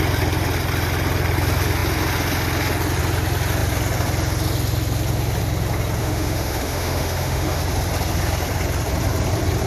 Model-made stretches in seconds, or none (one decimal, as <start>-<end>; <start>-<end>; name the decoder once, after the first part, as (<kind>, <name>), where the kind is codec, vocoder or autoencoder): 6.0-7.6 (autoencoder, DAC-VAE)

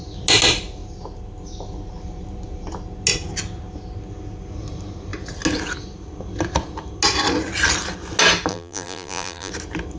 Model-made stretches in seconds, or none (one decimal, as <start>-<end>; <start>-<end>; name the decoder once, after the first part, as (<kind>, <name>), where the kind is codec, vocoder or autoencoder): 8.5-9.5 (vocoder, BigVGAN v2)

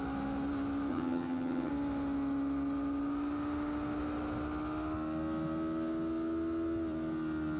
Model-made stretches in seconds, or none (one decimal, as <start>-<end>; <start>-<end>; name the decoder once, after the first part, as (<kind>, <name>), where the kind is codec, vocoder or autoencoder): 0.9-1.7 (vocoder, HiFi-GAN)